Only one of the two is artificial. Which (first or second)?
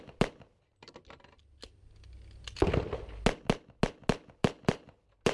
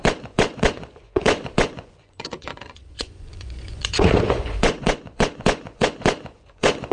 second